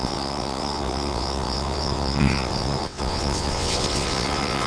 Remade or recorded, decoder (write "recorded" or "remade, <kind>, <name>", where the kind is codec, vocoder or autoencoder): remade, vocoder, WaveNeXt